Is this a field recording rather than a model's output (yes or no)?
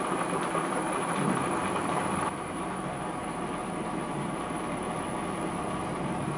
no